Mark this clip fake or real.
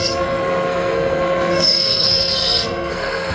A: fake